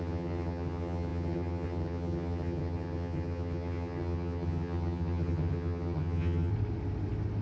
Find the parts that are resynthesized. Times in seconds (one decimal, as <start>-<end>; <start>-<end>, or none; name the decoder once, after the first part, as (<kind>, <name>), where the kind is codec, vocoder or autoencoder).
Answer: 0.0-6.5 (vocoder, HiFi-GAN)